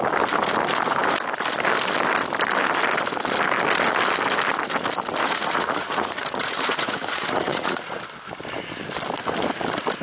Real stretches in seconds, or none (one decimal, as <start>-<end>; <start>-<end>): 0.0-5.2; 8.0-10.0